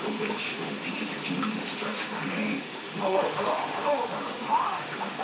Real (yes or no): no